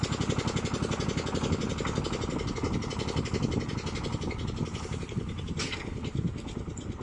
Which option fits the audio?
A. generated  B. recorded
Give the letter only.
B